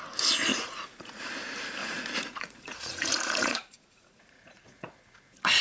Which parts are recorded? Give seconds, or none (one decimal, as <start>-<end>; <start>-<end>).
0.0-0.5; 1.3-1.8